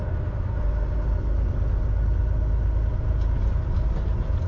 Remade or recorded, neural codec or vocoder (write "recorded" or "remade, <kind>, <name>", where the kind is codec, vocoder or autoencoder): recorded